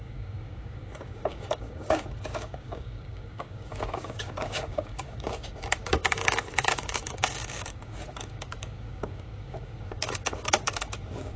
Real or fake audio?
fake